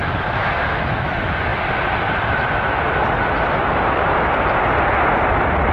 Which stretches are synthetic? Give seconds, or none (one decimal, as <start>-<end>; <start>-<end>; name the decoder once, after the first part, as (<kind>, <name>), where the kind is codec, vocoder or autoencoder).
0.0-1.1 (autoencoder, DAC-VAE)